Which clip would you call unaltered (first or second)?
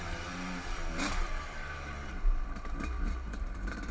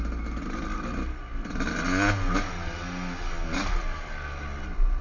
second